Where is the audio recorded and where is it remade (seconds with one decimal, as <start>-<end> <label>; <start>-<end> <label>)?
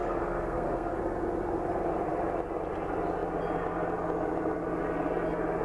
0.0-1.0 remade; 1.0-5.6 recorded